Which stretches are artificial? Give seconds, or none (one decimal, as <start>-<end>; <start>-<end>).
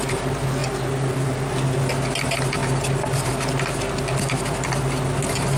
none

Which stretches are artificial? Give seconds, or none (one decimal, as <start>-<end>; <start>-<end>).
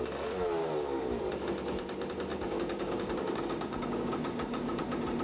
0.6-1.2; 2.3-4.8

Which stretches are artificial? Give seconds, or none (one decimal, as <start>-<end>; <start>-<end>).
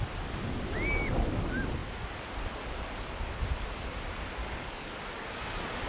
4.4-5.0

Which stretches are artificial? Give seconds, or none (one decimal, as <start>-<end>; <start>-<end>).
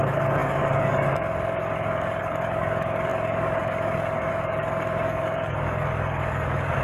0.0-6.8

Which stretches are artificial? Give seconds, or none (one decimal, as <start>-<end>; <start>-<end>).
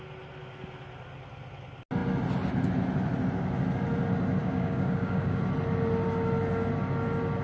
4.4-5.4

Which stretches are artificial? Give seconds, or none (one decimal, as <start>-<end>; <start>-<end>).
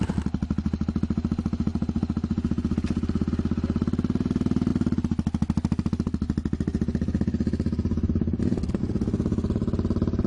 none